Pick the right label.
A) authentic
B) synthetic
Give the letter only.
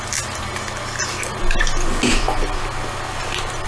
A